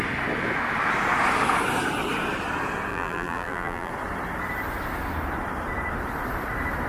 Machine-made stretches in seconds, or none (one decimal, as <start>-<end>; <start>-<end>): 2.9-3.9